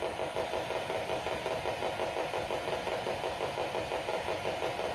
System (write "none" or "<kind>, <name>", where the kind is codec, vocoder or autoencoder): none